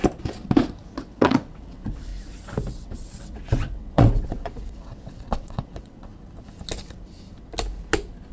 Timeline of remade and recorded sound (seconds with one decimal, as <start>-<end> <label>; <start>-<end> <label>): 0.0-1.0 recorded; 1.0-2.1 remade; 2.1-2.7 recorded; 2.7-6.1 remade; 6.1-8.3 recorded